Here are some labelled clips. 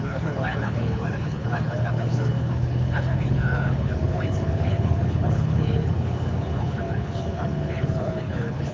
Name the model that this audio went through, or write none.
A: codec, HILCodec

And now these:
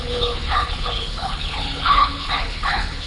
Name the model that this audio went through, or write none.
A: codec, HILCodec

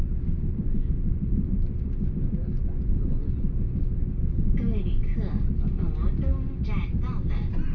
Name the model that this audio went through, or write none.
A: none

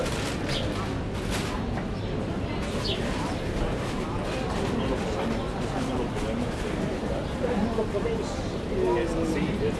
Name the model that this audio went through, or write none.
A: none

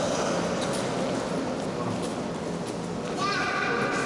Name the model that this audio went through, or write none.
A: none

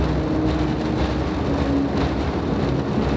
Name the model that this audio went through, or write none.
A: none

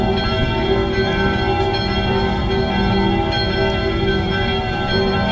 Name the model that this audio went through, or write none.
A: none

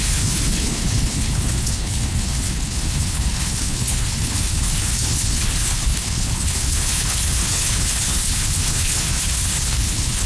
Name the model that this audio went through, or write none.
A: codec, HILCodec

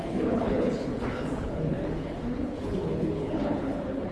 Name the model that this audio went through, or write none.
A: codec, HILCodec